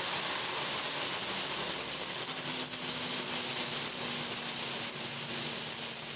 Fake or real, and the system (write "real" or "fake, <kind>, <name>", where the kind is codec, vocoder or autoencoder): real